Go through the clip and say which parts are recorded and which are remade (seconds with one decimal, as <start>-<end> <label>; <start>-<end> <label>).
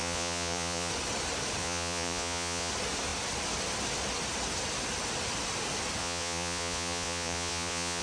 0.0-0.9 remade; 0.9-1.6 recorded; 1.6-2.7 remade; 2.7-6.0 recorded; 6.0-8.0 remade